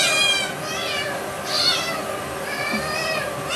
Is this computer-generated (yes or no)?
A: no